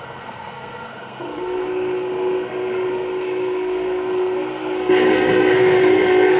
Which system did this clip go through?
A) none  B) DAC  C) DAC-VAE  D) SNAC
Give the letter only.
D